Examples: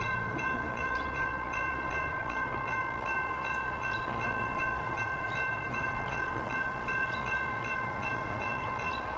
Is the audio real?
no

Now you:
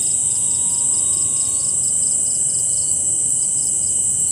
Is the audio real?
yes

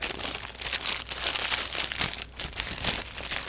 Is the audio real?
yes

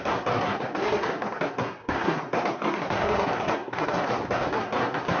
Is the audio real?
no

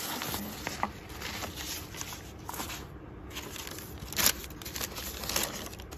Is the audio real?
yes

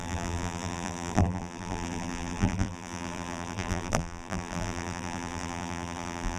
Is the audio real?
no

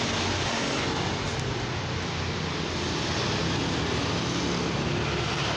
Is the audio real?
yes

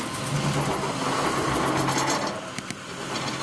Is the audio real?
yes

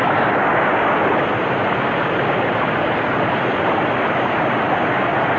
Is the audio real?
yes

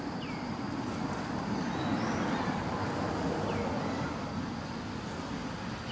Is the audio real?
yes